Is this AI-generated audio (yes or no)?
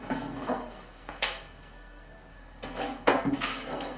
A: yes